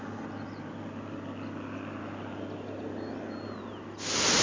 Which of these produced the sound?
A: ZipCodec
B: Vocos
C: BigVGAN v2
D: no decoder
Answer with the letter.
D